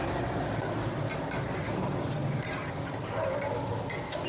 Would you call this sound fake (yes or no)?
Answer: yes